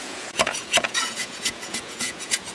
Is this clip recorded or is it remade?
remade